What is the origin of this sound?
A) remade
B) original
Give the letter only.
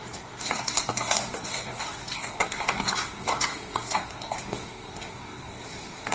A